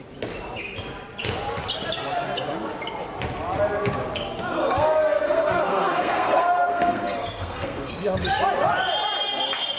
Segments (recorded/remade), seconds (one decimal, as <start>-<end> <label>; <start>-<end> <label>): 0.0-4.6 recorded; 4.6-7.9 remade; 7.9-9.8 recorded